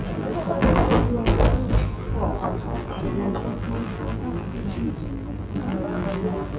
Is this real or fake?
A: fake